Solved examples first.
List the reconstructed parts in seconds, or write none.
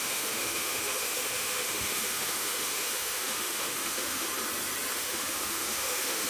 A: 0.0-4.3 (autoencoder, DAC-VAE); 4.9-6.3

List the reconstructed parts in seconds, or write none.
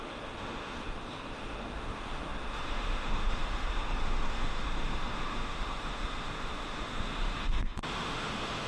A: 0.0-8.7 (autoencoder, DAC-VAE)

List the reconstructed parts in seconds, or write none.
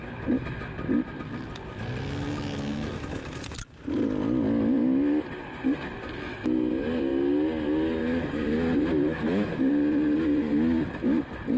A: 9.1-9.7 (autoencoder, DAC-VAE)